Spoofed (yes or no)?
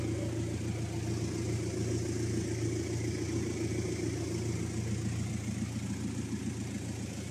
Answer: no